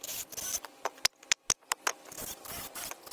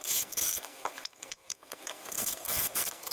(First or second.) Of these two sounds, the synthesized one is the second